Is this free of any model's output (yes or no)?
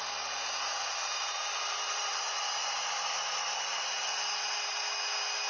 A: yes